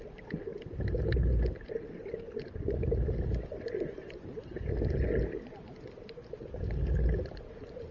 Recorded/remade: recorded